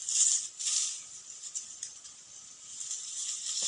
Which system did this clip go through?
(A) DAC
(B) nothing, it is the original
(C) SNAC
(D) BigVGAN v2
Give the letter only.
B